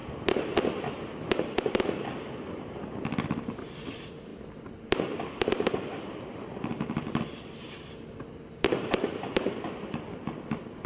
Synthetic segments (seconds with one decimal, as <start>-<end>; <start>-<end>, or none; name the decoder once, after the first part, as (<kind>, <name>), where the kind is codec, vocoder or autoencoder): 0.0-10.9 (vocoder, BigVGAN v2)